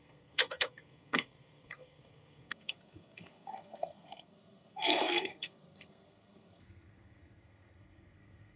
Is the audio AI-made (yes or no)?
yes